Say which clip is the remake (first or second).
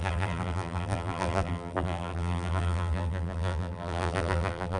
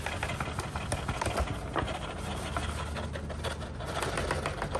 first